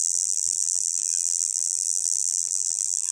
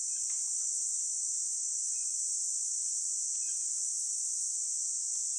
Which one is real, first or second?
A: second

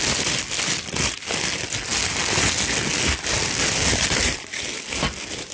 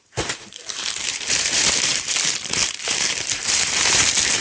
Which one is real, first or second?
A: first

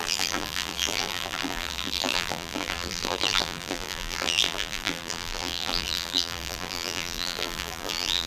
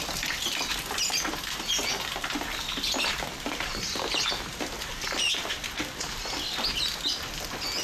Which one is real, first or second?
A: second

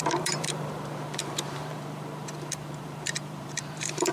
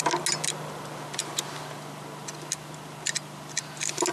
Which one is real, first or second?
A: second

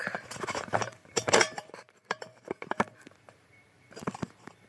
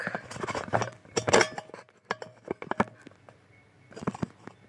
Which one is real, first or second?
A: second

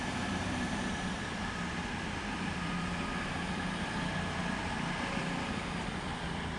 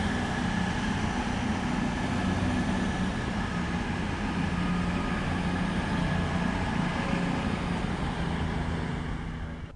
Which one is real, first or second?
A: second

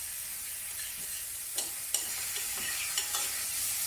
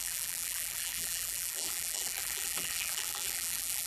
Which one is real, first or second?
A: first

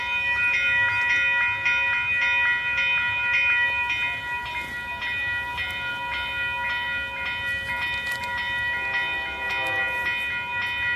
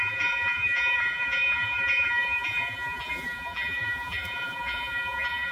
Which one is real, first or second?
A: first